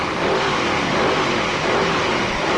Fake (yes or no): yes